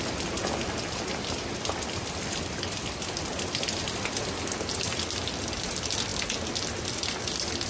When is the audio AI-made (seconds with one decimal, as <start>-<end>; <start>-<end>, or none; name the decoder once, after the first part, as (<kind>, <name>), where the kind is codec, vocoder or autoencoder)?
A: none